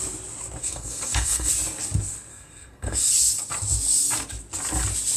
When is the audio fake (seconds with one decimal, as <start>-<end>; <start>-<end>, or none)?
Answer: 0.6-1.5; 2.3-3.1